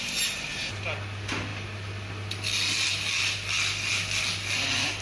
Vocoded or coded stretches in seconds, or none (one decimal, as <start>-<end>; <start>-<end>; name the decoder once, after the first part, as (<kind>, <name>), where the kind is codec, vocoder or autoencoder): none